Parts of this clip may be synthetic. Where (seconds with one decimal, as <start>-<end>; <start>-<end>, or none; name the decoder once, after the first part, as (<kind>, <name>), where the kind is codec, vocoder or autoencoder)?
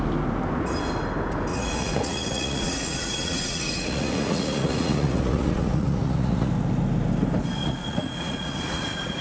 1.5-6.5 (vocoder, Vocos); 7.6-9.2